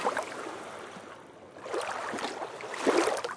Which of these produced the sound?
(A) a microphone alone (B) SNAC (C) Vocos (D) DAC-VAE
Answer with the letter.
A